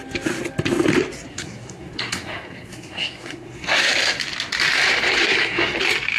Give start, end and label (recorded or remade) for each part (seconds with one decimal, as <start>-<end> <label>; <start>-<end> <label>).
0.0-1.3 recorded; 1.3-3.9 remade; 3.9-5.2 recorded; 5.2-5.8 remade; 5.8-6.2 recorded